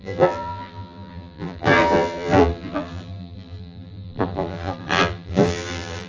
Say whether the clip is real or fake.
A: fake